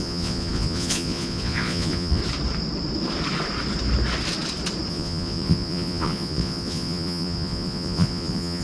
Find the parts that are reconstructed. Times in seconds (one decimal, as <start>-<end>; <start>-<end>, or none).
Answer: 0.0-2.2; 4.9-8.6